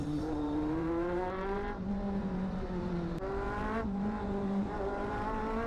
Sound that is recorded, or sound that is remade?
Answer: remade